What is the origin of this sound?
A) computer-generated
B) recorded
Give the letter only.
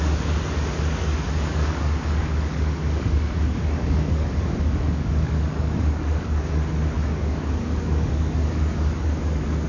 A